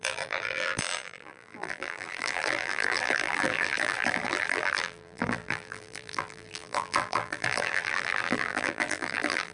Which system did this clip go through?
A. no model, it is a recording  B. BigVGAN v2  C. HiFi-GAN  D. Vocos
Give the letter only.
B